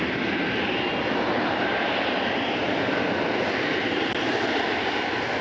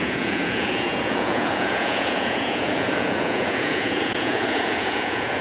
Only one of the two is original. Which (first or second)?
first